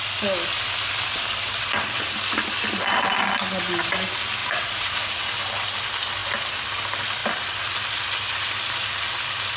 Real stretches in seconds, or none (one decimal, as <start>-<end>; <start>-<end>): 0.0-4.4; 5.3-9.6

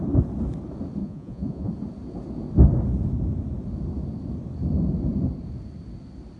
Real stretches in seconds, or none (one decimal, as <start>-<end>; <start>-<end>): 0.0-1.0; 1.7-6.4